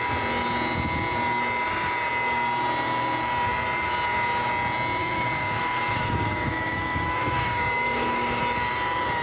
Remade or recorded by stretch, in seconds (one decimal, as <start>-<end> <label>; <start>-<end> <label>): 0.0-5.0 recorded; 5.0-8.4 remade; 8.4-9.2 recorded